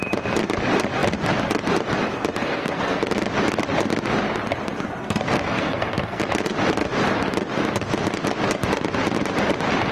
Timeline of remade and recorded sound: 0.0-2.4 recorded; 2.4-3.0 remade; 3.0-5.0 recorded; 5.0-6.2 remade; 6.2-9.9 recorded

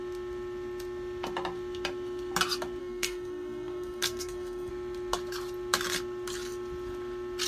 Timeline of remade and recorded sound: 0.0-2.8 recorded; 2.8-4.7 remade; 4.7-7.5 recorded